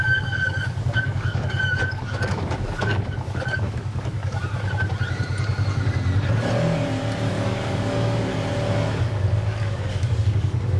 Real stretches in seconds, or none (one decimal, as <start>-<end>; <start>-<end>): 4.4-7.3; 8.3-9.0